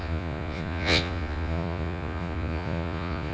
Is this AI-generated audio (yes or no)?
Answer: yes